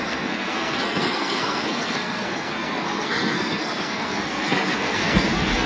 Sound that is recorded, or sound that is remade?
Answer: remade